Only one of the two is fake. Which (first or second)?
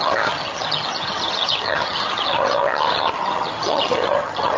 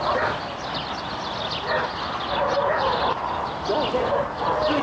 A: first